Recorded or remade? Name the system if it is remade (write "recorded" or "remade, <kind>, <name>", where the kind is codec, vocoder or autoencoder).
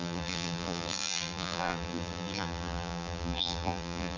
remade, vocoder, BigVGAN v2